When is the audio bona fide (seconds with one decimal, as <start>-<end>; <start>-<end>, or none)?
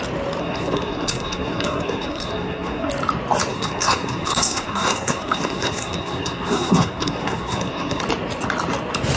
0.0-0.4; 2.9-3.5; 8.0-9.2